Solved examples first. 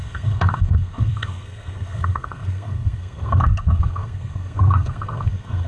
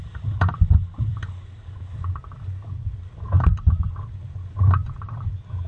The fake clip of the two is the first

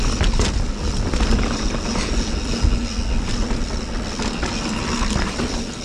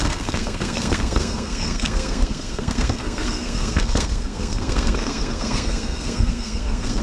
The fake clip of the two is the second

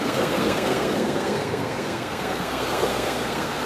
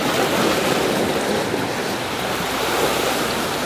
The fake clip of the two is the first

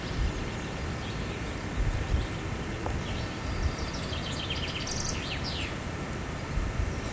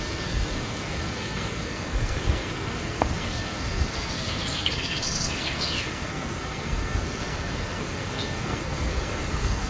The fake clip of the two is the second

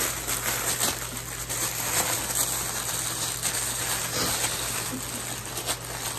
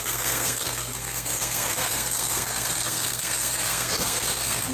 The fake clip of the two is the second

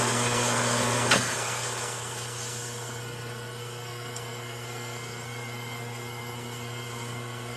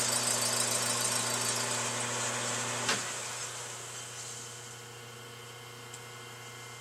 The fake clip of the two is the first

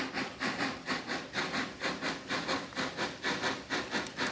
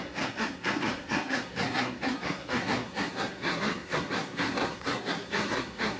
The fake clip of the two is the second